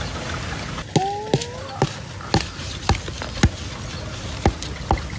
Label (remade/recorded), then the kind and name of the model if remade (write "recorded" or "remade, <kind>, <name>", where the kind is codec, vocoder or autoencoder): recorded